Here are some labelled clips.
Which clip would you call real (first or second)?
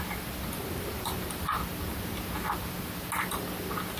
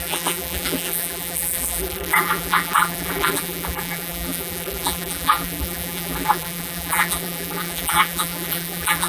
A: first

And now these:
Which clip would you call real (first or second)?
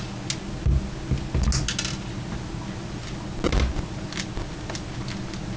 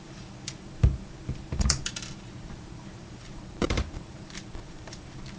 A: first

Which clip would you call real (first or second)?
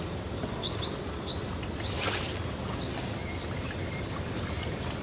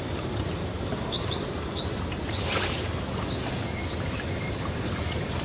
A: first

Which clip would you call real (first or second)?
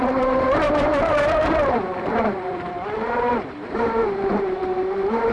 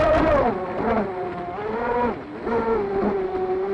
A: second